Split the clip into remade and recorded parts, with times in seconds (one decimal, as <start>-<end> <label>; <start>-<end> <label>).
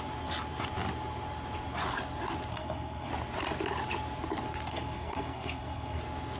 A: 0.0-2.5 recorded; 2.5-3.1 remade; 3.1-4.7 recorded; 4.7-6.0 remade; 6.0-6.4 recorded